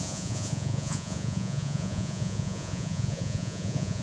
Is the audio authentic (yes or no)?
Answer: no